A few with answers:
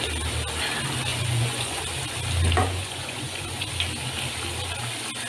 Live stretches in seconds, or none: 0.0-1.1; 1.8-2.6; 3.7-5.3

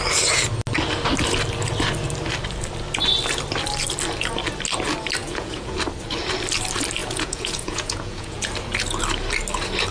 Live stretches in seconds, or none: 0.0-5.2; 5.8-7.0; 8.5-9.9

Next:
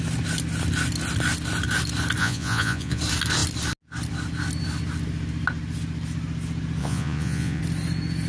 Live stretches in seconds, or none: 0.0-2.2; 3.0-6.8; 7.6-8.3

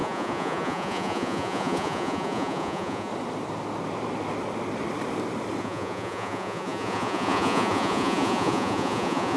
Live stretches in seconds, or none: 3.1-5.6